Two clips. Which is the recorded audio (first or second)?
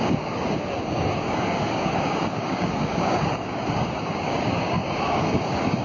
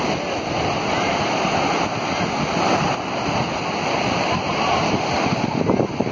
second